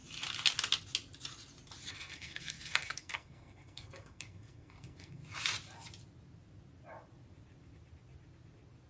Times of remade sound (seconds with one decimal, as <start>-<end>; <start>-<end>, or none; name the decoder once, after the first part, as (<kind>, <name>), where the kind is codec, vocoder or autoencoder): 1.9-5.2 (codec, SNAC)